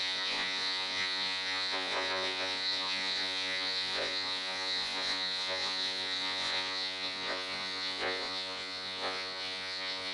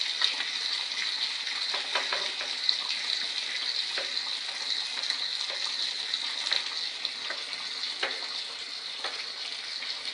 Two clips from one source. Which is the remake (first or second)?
first